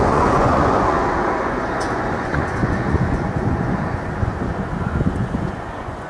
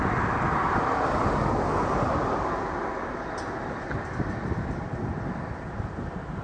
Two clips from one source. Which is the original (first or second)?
second